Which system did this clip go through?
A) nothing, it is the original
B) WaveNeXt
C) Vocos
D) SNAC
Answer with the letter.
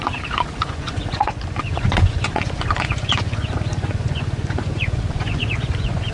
C